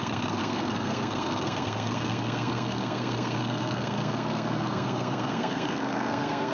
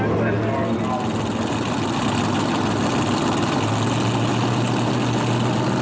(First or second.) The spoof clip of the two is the first